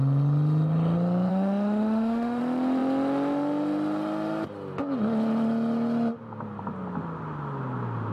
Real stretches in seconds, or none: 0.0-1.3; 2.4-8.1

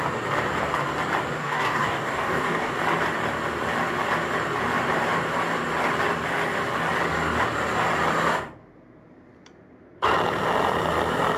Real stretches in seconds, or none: 0.0-1.4; 2.7-11.4